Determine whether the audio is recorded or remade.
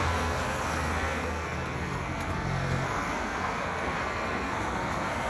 remade